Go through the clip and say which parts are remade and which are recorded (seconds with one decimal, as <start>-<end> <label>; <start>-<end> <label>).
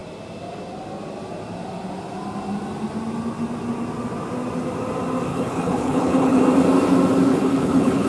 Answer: 0.0-5.3 recorded; 5.3-6.4 remade; 6.4-7.3 recorded; 7.3-8.1 remade